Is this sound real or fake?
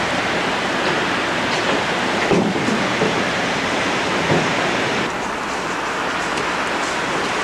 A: real